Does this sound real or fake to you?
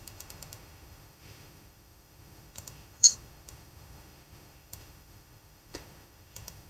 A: fake